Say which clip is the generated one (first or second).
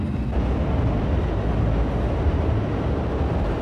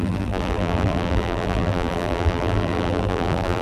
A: second